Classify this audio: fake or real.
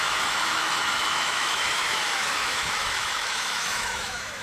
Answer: fake